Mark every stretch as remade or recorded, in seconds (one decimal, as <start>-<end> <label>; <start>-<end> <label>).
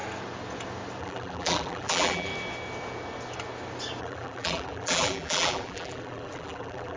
0.0-1.0 recorded; 1.0-2.3 remade; 2.3-4.0 recorded; 4.0-7.0 remade